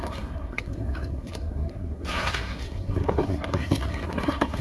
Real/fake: fake